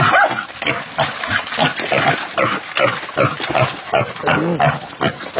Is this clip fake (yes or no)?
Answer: no